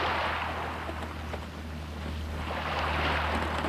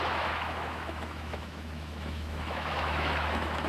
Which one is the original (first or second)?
first